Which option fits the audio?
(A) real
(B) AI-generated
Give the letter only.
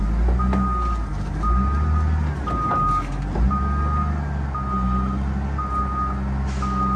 A